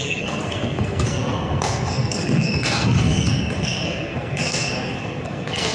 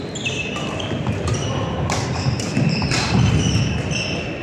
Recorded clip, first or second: second